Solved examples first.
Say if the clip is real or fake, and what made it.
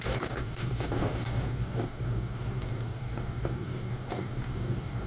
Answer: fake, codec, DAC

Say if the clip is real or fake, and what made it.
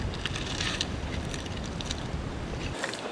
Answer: fake, vocoder, BigVGAN v2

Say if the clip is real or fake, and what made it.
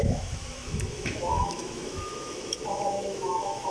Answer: fake, autoencoder, DAC-VAE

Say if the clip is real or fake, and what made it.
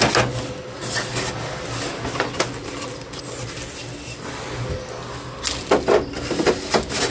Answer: real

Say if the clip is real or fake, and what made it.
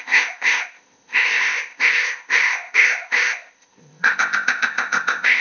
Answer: fake, codec, ZipCodec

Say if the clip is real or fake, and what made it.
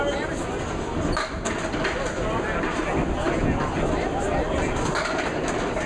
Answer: real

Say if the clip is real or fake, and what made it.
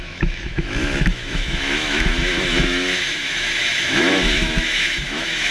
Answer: fake, autoencoder, DAC-VAE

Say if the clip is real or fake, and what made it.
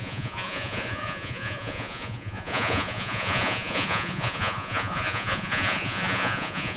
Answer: fake, vocoder, Vocos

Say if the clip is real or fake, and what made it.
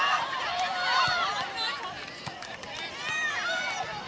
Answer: fake, vocoder, BigVGAN v2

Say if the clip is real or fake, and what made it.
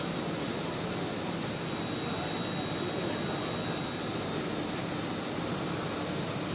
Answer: real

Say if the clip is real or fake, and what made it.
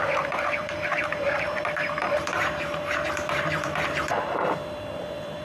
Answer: fake, vocoder, BigVGAN v2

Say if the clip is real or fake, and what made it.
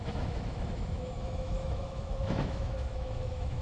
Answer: fake, autoencoder, DAC-VAE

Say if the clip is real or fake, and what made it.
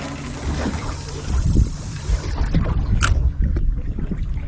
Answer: real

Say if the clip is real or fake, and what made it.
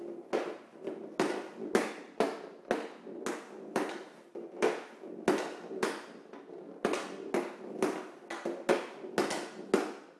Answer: real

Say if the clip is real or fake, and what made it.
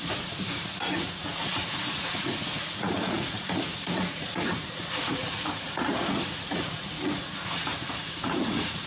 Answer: fake, vocoder, Vocos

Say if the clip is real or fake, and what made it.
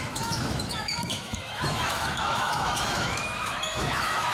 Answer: fake, autoencoder, DAC-VAE